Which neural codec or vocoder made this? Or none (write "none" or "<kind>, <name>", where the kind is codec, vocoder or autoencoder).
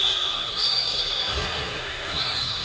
codec, SNAC